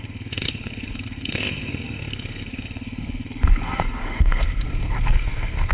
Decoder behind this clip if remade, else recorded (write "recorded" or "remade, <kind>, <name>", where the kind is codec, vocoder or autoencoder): remade, codec, SNAC